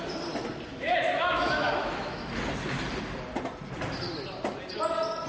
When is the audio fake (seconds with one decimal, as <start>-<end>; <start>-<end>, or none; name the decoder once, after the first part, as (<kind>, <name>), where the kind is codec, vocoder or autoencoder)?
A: 0.7-2.3 (autoencoder, DAC-VAE)